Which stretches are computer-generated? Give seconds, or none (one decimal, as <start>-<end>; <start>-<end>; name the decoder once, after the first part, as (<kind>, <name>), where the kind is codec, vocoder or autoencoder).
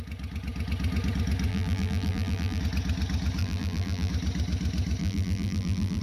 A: 1.5-2.6 (vocoder, BigVGAN v2); 3.4-4.1; 5.0-6.0